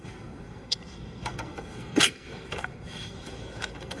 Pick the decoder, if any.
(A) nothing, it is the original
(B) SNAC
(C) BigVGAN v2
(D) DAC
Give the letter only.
B